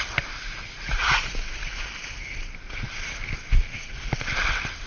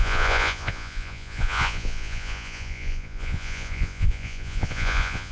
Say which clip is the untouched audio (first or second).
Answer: first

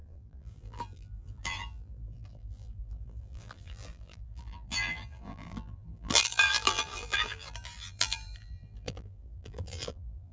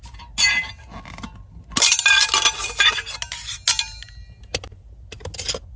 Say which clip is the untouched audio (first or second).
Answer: second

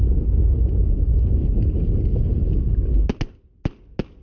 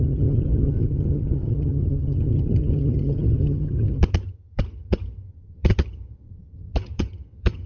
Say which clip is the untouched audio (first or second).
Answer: first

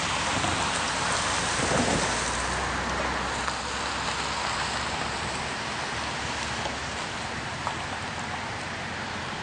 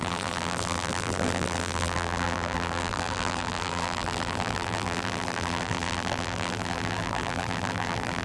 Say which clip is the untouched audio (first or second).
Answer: first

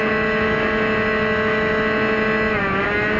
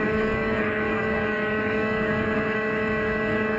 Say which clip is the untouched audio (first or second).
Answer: first